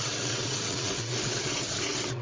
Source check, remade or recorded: remade